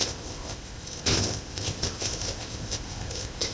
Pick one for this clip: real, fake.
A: fake